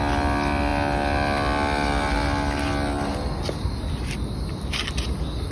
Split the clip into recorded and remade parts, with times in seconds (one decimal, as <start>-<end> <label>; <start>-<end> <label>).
0.0-5.5 recorded